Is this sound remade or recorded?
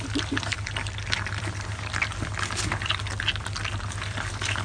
recorded